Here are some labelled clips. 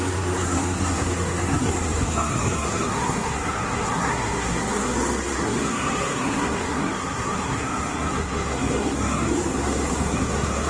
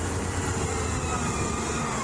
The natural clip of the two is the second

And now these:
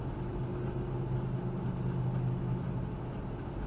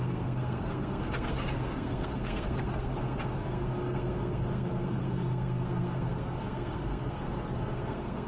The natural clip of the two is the first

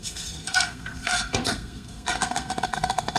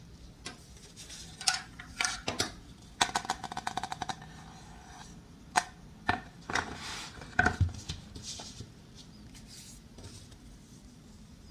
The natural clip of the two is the second